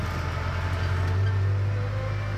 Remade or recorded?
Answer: recorded